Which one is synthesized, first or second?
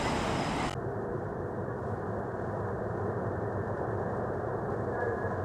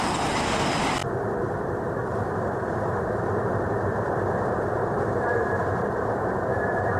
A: second